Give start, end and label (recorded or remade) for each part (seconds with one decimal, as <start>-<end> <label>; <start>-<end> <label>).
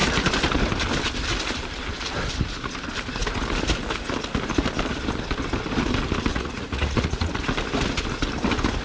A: 0.0-6.3 recorded; 6.3-7.3 remade; 7.3-8.8 recorded